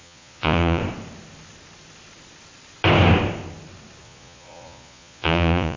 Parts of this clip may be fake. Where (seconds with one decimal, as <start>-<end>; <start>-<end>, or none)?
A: 0.0-0.8; 4.0-5.8